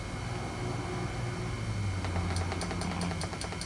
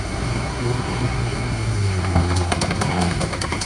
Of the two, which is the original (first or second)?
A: first